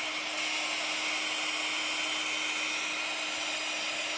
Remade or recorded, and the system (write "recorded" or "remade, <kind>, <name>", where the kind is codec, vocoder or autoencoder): recorded